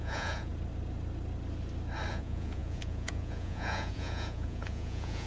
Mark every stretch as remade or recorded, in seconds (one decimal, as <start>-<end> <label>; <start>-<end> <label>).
0.0-0.5 remade; 0.5-2.1 recorded; 2.1-5.3 remade